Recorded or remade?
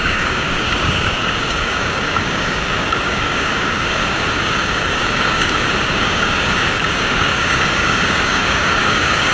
remade